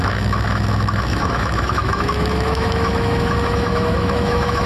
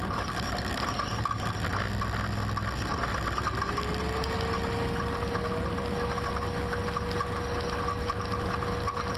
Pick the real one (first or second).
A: second